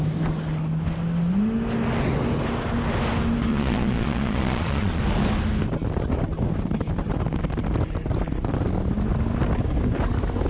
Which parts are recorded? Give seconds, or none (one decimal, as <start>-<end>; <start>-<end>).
0.0-3.5; 5.0-10.5